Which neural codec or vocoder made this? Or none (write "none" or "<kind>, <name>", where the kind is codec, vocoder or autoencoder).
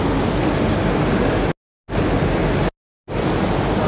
none